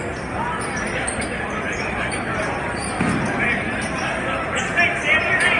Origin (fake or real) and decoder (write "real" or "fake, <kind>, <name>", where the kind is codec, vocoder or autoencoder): real